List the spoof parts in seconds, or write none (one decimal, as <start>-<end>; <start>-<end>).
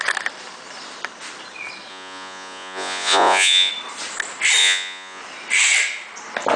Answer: 1.9-3.7; 4.6-5.2